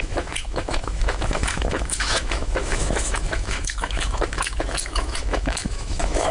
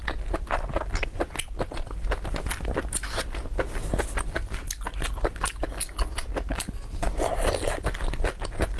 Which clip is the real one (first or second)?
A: second